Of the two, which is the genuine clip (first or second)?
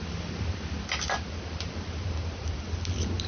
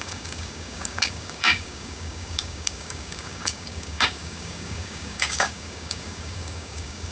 first